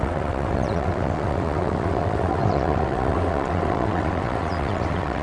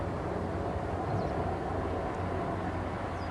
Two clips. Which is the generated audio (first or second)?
first